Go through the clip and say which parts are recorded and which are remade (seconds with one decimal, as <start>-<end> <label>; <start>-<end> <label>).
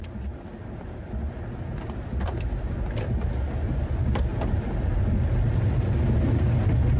0.0-2.1 recorded; 2.1-3.9 remade; 3.9-4.3 recorded; 4.3-5.6 remade; 5.6-7.0 recorded